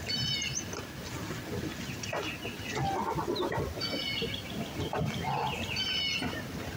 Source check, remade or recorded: recorded